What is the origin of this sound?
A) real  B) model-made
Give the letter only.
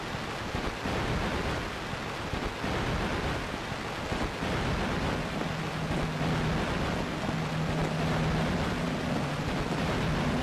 A